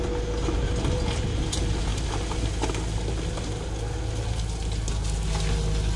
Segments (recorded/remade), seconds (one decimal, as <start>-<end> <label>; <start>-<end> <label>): 0.0-6.0 recorded